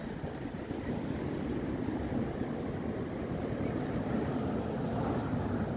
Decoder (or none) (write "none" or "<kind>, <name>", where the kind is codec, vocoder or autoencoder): none